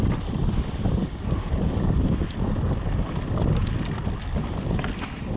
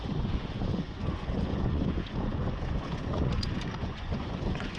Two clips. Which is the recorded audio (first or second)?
first